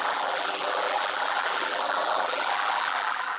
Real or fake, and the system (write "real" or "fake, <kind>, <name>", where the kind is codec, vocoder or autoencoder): fake, vocoder, BigVGAN v2